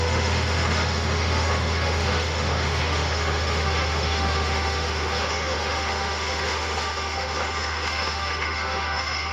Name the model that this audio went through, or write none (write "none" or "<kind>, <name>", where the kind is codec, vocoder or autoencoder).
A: autoencoder, DAC-VAE